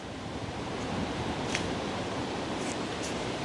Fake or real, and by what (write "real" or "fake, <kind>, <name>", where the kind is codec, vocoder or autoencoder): fake, vocoder, BigVGAN v2